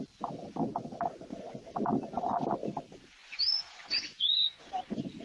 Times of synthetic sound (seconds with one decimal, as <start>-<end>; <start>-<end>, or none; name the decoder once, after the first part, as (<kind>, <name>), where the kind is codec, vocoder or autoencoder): 3.2-4.7 (vocoder, Vocos)